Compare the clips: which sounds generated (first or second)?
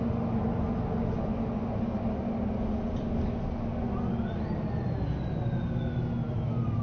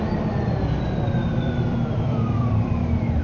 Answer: second